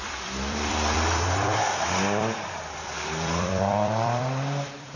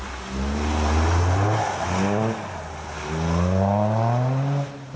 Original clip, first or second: second